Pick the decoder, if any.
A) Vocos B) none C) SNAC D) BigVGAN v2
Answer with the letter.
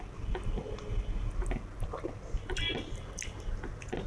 B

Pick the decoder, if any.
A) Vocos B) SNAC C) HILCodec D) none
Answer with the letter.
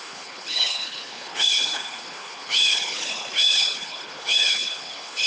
C